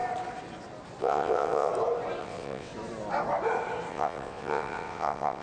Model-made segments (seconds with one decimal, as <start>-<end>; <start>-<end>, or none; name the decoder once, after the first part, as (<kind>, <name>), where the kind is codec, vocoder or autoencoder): 1.0-1.7 (vocoder, WaveNeXt); 2.2-2.7; 3.9-5.4